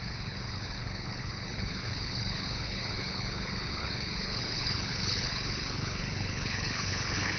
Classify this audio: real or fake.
fake